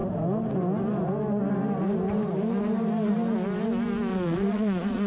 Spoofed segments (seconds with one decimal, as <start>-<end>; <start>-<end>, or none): 4.1-5.1